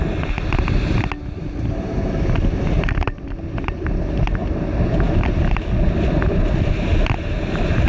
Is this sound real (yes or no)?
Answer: yes